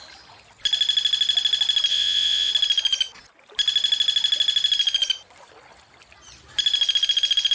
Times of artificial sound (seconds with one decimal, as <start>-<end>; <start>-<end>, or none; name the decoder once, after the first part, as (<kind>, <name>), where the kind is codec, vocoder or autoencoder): 1.9-2.5 (vocoder, WaveNeXt)